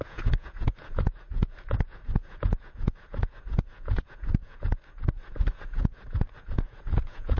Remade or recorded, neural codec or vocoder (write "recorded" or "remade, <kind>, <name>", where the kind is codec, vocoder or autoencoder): remade, vocoder, Vocos